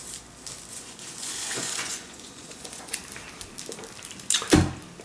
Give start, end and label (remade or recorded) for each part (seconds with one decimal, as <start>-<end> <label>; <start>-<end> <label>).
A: 0.0-0.7 recorded; 0.7-3.0 remade; 3.0-5.0 recorded